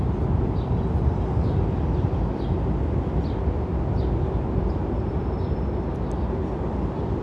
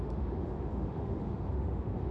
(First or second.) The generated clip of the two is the second